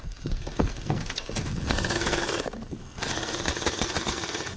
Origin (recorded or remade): remade